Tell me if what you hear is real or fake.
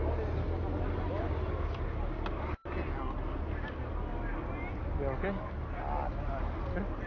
real